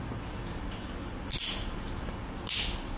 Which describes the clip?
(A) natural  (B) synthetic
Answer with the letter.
A